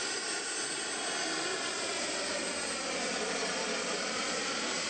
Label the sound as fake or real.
real